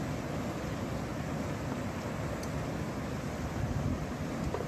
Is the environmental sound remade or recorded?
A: recorded